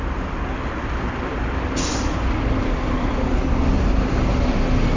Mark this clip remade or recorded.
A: recorded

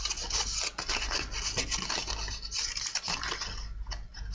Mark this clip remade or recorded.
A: recorded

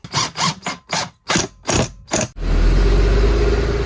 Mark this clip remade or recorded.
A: recorded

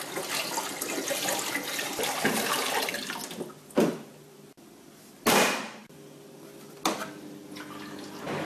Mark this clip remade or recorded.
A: recorded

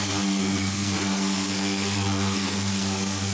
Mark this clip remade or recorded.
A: remade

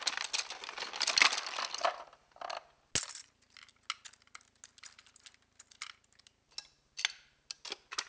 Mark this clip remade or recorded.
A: recorded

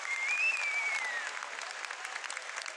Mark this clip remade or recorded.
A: recorded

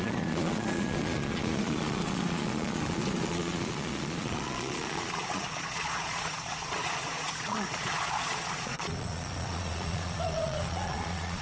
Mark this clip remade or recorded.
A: remade